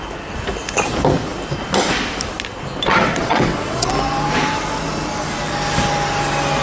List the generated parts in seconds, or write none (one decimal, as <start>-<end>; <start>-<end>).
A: 2.9-3.9